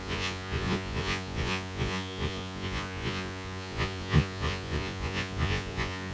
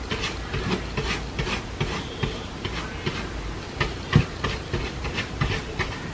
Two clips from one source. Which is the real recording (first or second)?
second